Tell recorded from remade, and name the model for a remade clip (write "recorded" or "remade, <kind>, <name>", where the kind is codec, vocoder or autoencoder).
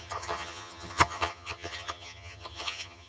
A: remade, vocoder, HiFi-GAN